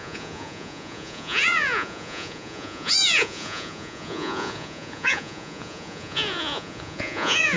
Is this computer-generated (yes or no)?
yes